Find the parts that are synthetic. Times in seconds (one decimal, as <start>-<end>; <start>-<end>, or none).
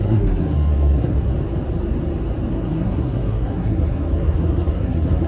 0.0-1.3; 2.5-5.3